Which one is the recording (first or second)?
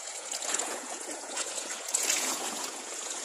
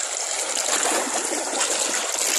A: second